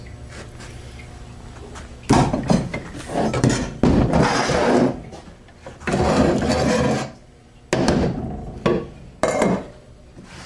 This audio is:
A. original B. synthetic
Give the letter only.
A